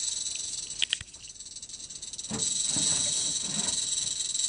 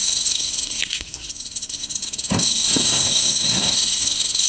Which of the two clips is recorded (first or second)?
first